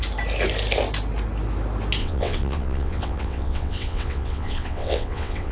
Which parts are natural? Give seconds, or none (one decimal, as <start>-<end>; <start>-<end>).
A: 0.0-2.0